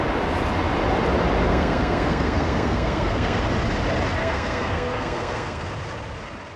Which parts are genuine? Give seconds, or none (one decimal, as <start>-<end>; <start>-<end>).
0.0-1.5; 3.4-4.2; 5.7-6.6

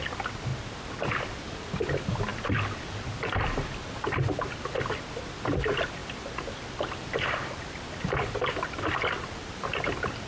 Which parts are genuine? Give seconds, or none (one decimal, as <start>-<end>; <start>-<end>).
0.0-10.3

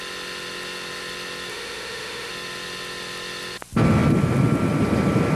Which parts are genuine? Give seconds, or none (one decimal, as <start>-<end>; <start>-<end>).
0.0-1.5; 2.3-5.4